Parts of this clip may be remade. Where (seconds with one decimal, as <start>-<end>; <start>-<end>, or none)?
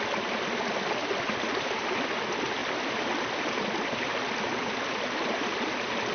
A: none